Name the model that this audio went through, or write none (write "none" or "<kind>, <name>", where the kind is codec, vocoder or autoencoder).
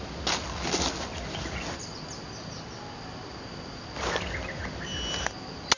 none